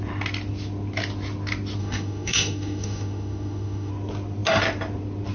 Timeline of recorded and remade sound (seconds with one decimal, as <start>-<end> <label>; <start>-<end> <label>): 0.0-1.8 recorded; 1.8-3.9 remade; 3.9-5.3 recorded